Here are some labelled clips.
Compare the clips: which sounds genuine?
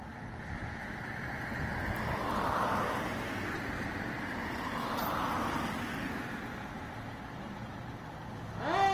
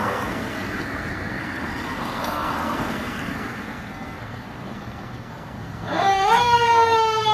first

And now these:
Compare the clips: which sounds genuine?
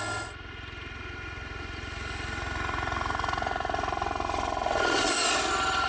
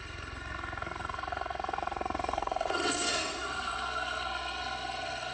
first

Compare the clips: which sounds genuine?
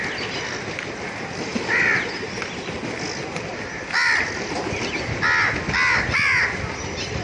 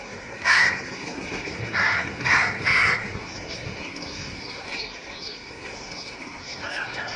first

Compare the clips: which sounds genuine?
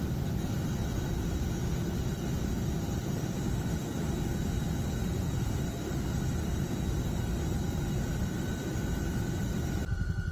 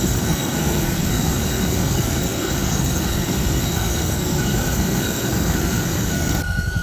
first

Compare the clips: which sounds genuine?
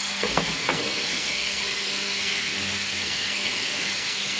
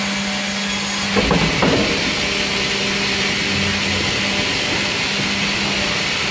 second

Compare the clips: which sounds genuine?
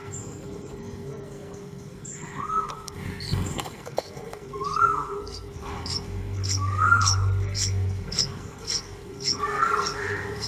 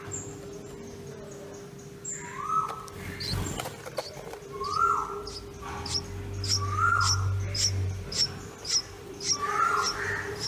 second